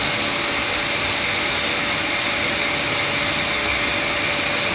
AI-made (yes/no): no